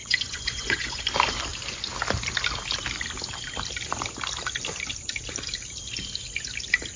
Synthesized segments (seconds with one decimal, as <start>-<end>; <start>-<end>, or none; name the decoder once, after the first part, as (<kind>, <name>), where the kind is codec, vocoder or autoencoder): 0.0-1.0 (vocoder, Vocos)